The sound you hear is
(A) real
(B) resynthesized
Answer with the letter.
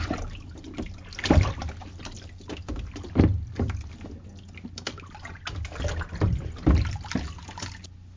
A